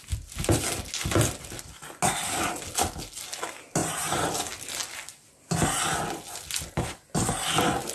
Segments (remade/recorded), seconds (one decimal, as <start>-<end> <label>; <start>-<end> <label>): 0.0-3.8 recorded; 3.8-4.3 remade; 4.3-7.9 recorded